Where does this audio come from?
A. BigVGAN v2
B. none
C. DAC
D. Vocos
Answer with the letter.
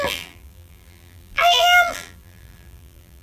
A